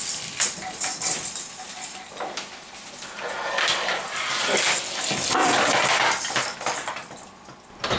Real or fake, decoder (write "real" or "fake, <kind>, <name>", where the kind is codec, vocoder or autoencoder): real